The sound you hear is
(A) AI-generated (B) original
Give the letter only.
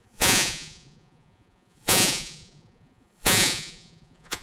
A